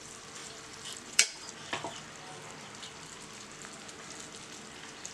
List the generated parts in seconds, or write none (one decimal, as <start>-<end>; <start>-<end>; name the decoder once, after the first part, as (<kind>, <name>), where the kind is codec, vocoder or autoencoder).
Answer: 0.4-1.5 (vocoder, BigVGAN v2)